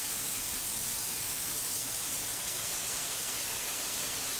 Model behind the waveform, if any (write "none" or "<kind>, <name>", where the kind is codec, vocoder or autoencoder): codec, SNAC